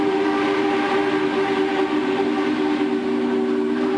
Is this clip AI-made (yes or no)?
no